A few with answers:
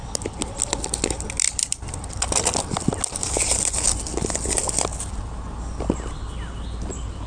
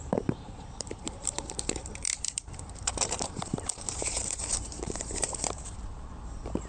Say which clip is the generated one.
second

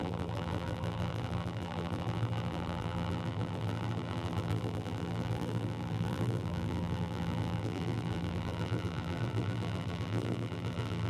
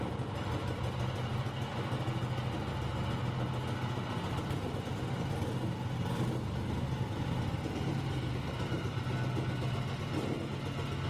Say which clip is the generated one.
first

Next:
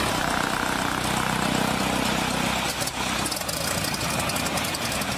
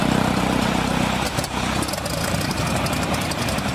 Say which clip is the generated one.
second